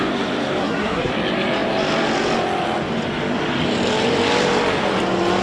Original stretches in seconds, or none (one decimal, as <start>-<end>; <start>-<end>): 0.0-0.6; 1.1-5.4